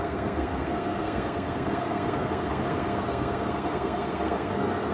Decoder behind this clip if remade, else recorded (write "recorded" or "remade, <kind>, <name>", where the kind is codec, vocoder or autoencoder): remade, codec, SNAC